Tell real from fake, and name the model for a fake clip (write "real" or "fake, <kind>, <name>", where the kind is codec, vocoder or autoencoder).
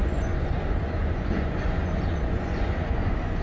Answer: fake, vocoder, Vocos